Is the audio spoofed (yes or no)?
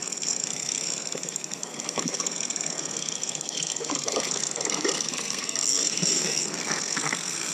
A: yes